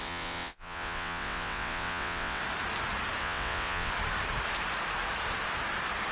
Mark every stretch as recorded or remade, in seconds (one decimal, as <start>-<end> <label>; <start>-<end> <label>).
0.0-2.4 remade; 2.4-3.2 recorded; 3.2-3.9 remade; 3.9-6.1 recorded